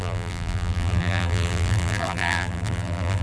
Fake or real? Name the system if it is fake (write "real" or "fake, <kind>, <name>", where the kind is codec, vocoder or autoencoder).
fake, vocoder, BigVGAN v2